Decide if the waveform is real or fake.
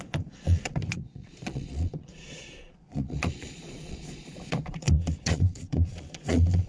fake